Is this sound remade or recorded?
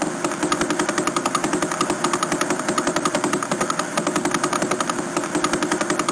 recorded